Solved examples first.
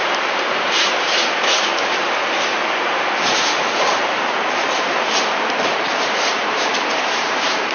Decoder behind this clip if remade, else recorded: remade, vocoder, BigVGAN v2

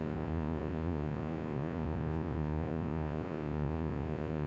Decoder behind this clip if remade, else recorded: remade, vocoder, Vocos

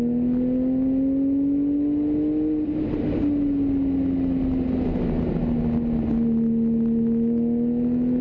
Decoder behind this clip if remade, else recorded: recorded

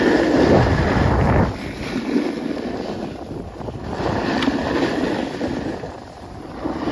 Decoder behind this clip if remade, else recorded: recorded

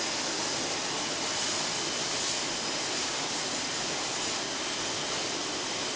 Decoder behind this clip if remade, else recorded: recorded